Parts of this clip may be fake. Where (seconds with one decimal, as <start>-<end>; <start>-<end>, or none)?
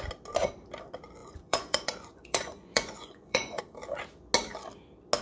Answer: 1.2-3.6